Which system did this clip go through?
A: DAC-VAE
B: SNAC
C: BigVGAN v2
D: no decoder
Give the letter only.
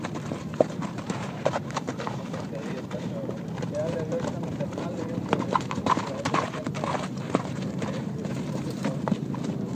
C